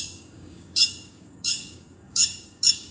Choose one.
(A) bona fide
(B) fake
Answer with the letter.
B